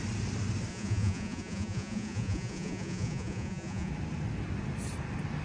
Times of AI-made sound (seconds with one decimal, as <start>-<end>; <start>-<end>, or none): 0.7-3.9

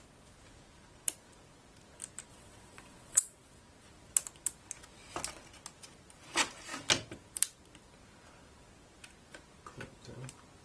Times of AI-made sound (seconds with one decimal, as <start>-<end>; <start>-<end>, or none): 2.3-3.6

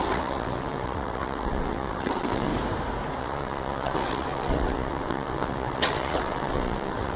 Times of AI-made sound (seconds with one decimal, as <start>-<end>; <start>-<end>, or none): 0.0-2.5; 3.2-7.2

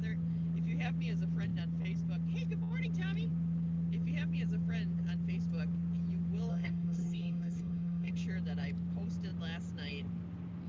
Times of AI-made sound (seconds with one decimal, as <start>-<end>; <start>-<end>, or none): 6.5-8.1

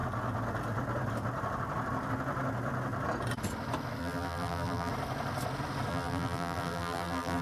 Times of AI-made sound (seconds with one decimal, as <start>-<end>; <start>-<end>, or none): 4.0-4.9; 5.9-7.4